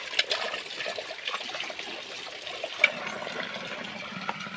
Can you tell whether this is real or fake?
real